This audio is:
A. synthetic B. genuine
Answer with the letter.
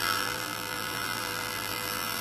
A